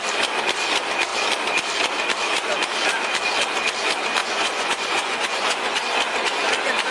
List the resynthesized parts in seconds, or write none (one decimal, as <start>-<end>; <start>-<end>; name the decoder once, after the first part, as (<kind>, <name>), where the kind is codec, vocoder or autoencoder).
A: 4.2-5.8 (vocoder, Vocos)